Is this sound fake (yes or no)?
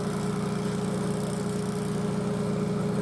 no